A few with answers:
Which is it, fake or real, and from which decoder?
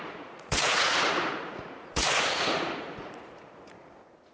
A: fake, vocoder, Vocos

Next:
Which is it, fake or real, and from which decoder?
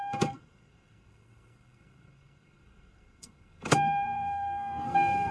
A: fake, codec, SNAC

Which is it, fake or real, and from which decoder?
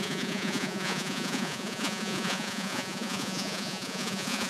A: fake, vocoder, Vocos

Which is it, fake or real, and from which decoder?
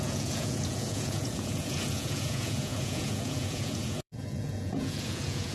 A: fake, vocoder, Vocos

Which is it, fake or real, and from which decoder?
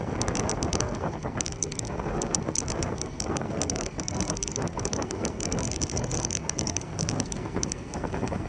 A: fake, codec, SNAC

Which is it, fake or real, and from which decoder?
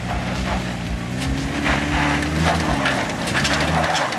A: real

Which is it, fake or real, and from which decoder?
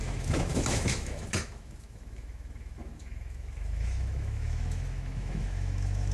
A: fake, autoencoder, DAC-VAE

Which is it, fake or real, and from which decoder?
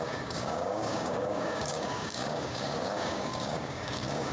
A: fake, codec, DAC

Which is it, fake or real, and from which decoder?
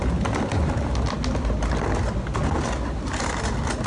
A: real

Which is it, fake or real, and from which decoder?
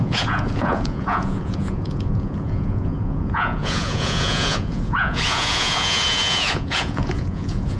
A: fake, vocoder, Vocos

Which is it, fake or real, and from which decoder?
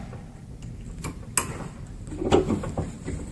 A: real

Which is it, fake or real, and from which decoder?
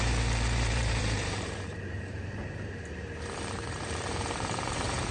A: fake, vocoder, BigVGAN v2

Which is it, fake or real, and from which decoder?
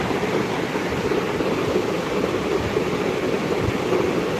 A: real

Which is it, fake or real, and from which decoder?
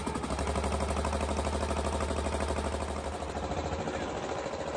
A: real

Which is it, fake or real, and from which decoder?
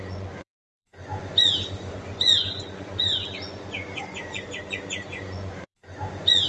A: fake, vocoder, Vocos